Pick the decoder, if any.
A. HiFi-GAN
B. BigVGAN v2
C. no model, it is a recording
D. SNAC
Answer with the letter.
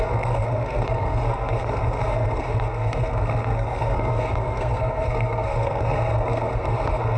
D